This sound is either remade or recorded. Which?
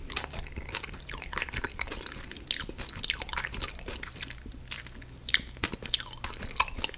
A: recorded